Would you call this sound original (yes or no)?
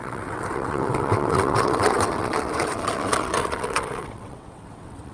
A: no